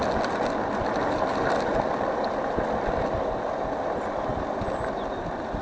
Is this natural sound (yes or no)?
yes